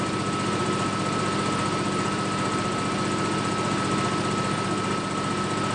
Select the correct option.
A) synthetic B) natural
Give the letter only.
B